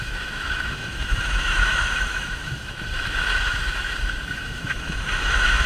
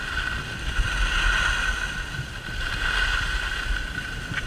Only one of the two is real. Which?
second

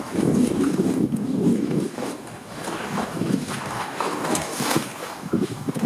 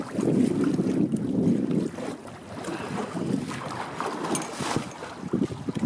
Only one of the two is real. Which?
second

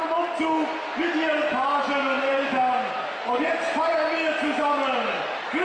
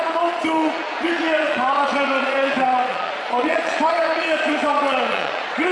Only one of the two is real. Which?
first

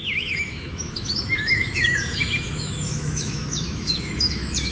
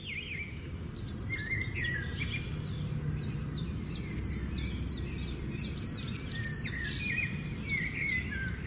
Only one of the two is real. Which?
second